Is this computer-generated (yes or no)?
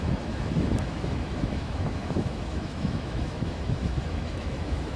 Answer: yes